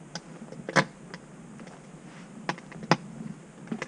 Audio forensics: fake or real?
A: real